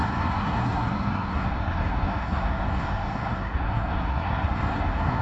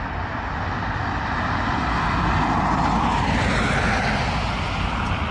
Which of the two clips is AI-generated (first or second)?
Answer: first